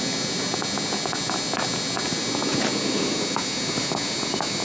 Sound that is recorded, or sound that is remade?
recorded